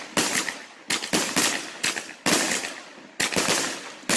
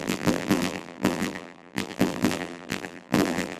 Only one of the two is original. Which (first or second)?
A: first